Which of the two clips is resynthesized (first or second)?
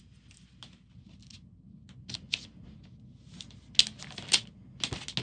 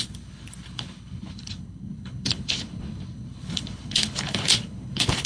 second